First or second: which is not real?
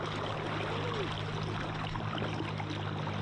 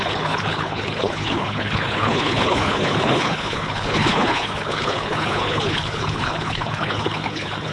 second